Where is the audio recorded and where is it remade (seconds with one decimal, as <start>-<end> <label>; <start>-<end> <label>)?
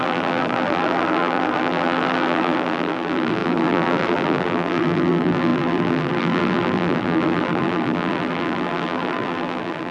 0.0-9.9 remade